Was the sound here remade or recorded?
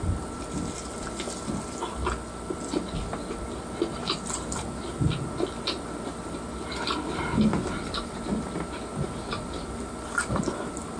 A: remade